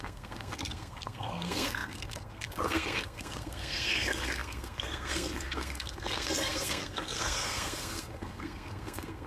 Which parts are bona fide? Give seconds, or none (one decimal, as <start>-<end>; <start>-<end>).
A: none